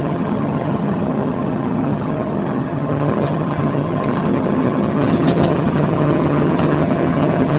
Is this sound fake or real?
fake